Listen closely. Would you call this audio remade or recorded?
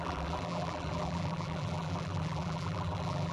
remade